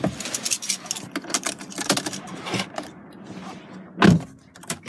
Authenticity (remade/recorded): recorded